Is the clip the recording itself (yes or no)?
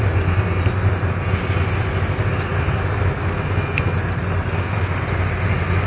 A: yes